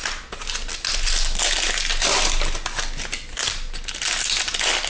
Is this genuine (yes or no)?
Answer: yes